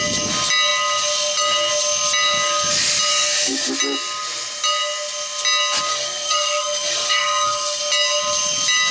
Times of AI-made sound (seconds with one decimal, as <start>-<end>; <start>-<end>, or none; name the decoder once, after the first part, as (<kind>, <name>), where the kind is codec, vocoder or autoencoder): 3.1-3.7 (codec, SNAC); 5.9-7.8